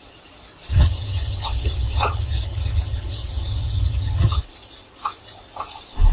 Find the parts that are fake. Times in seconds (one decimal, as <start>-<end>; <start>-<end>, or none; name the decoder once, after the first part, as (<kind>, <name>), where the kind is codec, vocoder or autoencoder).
0.7-4.4 (vocoder, HiFi-GAN)

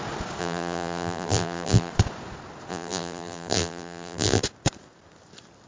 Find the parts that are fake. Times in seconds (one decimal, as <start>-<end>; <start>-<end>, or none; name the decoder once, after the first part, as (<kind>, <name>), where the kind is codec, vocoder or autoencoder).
0.4-1.9 (vocoder, BigVGAN v2); 2.7-4.4

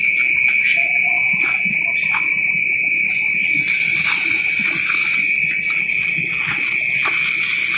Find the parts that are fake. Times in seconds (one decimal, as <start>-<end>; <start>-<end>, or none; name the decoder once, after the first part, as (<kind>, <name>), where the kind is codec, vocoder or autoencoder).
none

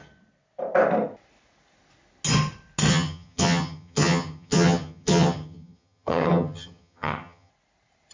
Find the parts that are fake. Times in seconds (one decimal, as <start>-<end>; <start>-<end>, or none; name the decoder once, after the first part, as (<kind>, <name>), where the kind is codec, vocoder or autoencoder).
2.9-7.5 (vocoder, HiFi-GAN)